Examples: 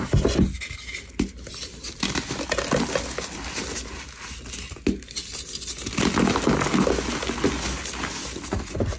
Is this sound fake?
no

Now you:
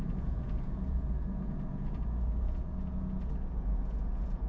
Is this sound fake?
yes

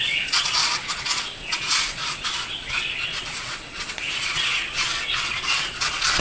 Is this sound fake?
yes